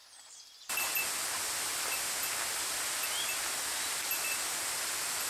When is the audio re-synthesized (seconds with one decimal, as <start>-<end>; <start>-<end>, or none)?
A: none